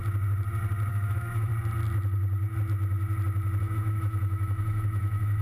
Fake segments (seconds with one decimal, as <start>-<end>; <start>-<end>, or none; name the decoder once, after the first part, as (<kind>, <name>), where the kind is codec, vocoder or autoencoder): 0.9-1.5 (autoencoder, DAC-VAE); 3.6-5.4